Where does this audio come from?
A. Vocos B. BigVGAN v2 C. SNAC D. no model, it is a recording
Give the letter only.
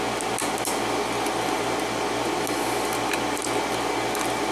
D